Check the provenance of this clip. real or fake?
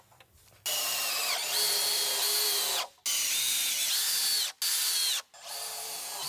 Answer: real